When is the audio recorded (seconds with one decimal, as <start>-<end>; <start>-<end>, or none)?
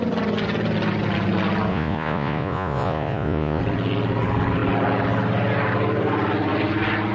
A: 0.0-1.7; 3.6-7.1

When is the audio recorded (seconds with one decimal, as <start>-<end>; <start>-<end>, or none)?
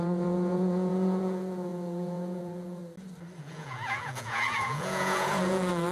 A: 2.8-3.4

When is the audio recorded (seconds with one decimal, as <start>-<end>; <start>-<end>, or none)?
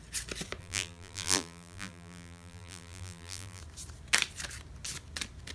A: 0.0-0.6; 3.6-5.5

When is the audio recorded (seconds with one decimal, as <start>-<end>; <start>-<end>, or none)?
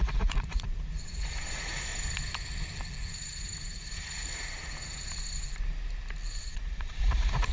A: 1.9-6.4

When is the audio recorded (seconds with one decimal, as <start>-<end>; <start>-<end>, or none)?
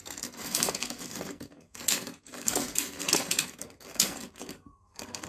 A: none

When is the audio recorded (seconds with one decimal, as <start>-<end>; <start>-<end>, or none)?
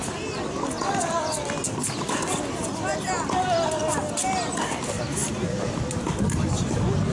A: 0.0-7.1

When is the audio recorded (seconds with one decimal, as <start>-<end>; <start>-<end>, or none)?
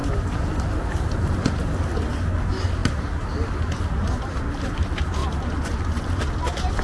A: 0.0-6.8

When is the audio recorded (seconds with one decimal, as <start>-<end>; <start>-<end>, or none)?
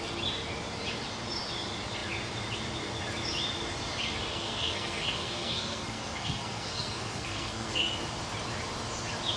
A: 0.0-4.3; 8.0-9.4